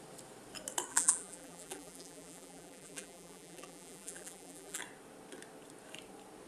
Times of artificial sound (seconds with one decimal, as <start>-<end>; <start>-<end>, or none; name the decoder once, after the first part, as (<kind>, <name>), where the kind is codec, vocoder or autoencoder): 0.9-4.8 (vocoder, BigVGAN v2)